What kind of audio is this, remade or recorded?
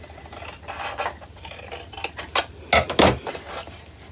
recorded